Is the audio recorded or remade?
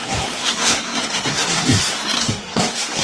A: remade